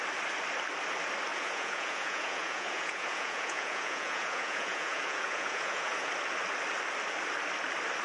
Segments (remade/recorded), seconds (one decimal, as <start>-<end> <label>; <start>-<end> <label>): 0.0-1.3 recorded; 1.3-6.1 remade; 6.1-8.0 recorded